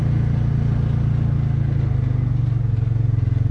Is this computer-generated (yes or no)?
no